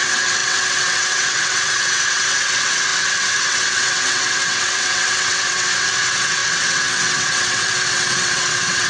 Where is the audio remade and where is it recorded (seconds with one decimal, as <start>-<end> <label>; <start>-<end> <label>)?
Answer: 0.0-8.9 remade